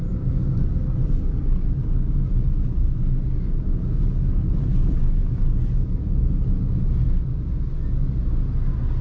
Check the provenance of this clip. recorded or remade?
recorded